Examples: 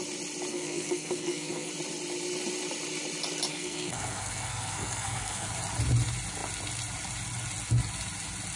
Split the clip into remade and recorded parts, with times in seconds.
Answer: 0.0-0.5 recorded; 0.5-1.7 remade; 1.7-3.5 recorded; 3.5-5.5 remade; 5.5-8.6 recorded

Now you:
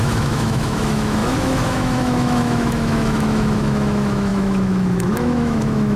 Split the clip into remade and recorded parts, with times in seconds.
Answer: 0.0-6.0 remade

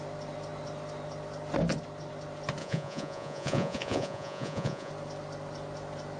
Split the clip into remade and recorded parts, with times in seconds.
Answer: 0.0-2.6 recorded; 2.6-4.9 remade; 4.9-6.2 recorded